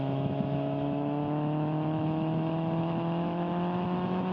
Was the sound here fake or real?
fake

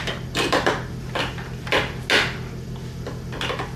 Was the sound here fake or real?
real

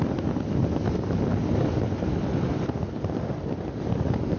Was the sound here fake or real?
real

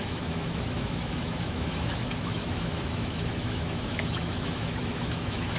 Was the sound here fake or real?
fake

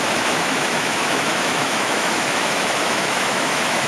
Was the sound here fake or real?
fake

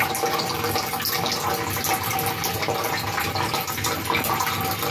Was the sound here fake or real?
real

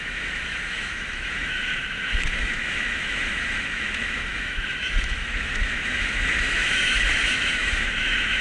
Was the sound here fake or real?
fake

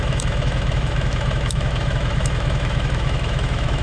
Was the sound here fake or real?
fake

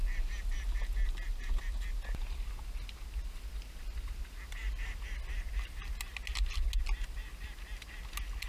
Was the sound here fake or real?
real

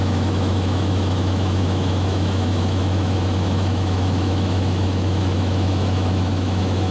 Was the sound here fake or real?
fake